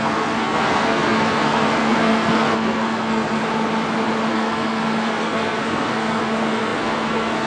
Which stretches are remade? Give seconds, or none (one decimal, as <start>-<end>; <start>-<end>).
0.0-3.4; 4.3-7.5